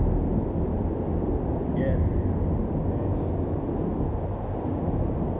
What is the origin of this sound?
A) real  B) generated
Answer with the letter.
A